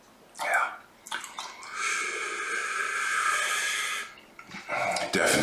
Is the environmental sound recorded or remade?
recorded